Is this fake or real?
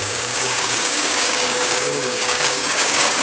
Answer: fake